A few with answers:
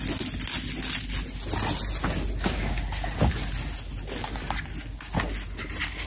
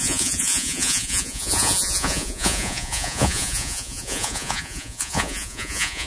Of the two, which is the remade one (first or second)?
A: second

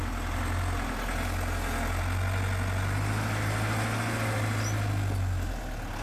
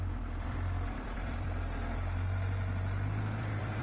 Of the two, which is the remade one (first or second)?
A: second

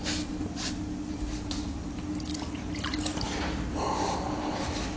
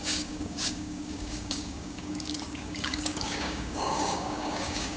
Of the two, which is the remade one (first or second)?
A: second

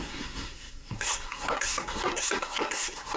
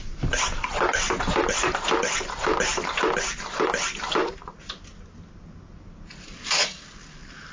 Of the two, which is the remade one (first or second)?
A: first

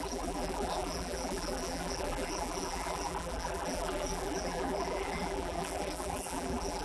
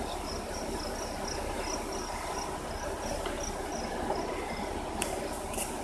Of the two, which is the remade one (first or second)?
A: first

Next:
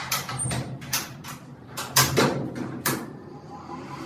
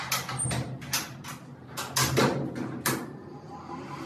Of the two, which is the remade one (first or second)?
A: first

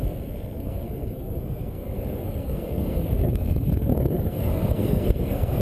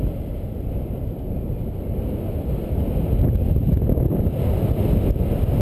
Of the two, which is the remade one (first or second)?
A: first